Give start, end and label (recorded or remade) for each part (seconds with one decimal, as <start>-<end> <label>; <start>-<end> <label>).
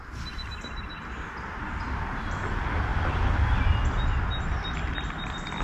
0.0-5.6 recorded